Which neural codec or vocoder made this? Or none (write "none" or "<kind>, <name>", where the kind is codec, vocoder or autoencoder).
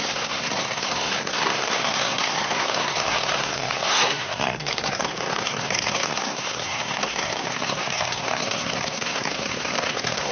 codec, SNAC